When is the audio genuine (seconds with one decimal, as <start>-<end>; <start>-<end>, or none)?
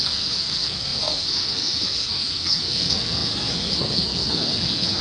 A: none